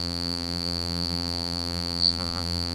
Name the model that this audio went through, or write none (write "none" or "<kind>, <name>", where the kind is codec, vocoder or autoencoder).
vocoder, BigVGAN v2